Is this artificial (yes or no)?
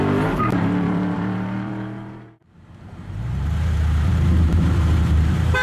yes